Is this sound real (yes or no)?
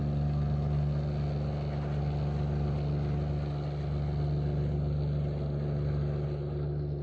yes